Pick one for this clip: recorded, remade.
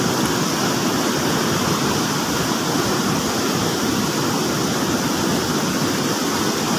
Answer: recorded